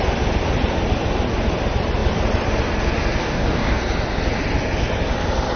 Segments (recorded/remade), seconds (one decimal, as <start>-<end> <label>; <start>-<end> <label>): 0.0-3.2 recorded; 3.2-3.8 remade; 3.8-5.6 recorded